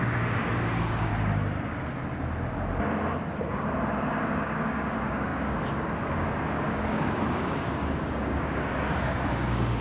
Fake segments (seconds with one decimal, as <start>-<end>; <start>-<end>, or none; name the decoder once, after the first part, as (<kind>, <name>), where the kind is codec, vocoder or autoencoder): 0.0-1.1 (codec, DAC); 4.2-9.8